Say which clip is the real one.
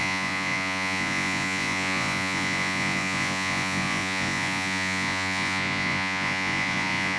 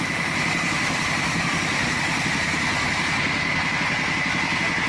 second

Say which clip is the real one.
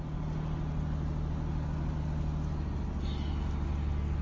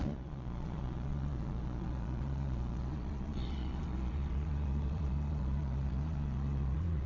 first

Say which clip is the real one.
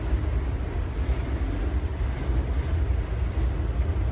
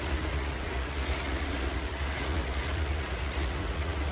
first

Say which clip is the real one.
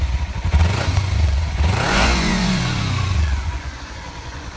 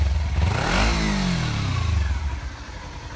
second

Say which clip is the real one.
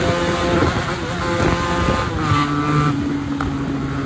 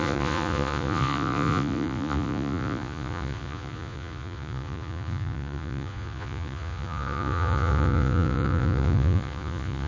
first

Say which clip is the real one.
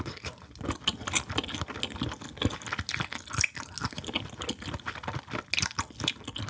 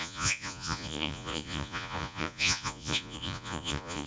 first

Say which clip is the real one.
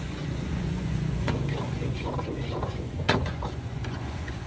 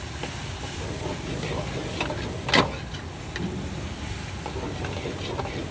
second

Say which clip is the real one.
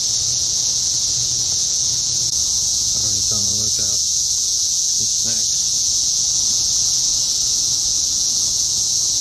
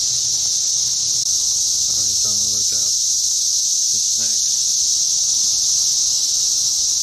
second